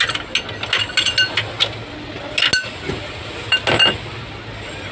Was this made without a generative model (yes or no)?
yes